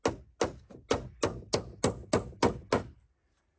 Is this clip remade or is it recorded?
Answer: recorded